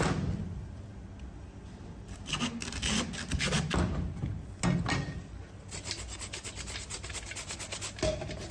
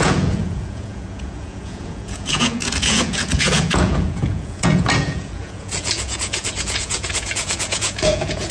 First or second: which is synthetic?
second